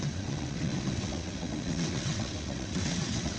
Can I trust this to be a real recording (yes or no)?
no